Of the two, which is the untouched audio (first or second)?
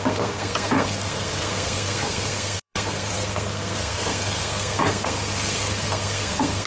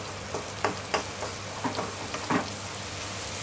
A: second